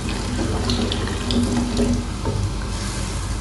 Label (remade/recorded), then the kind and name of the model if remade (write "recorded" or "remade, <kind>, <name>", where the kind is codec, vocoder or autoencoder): recorded